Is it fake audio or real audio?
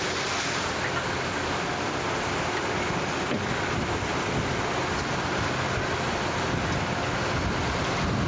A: real